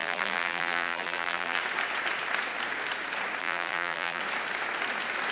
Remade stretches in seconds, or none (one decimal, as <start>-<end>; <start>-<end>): 0.0-1.6; 3.4-4.2

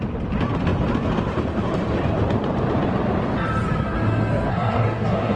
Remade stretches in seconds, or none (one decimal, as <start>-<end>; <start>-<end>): 4.5-5.4